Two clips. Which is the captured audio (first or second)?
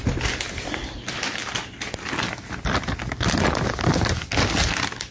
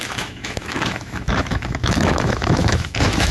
first